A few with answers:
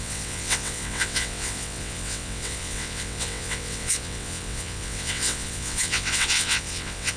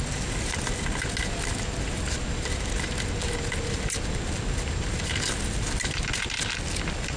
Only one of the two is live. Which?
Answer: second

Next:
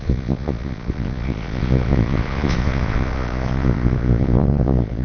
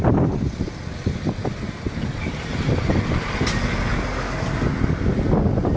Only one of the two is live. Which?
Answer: second